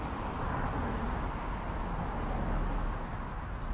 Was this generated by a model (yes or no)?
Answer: no